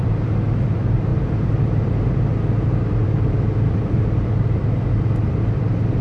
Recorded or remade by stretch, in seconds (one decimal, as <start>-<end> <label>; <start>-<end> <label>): 0.0-1.1 recorded; 1.1-2.0 remade; 2.0-3.0 recorded; 3.0-4.6 remade; 4.6-6.0 recorded